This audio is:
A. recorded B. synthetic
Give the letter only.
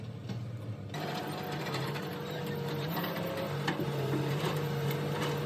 A